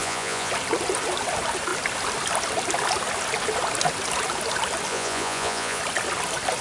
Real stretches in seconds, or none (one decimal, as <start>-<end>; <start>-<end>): 0.5-4.9; 5.8-6.6